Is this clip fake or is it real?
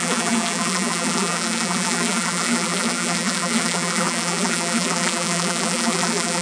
fake